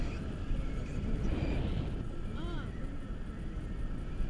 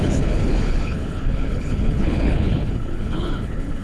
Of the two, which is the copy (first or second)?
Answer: second